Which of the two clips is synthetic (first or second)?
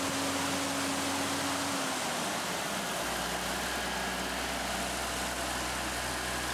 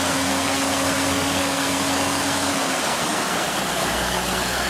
second